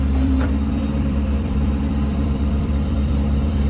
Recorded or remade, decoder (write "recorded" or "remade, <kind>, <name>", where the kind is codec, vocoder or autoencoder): remade, vocoder, BigVGAN v2